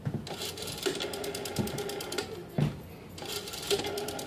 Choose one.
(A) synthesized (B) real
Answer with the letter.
B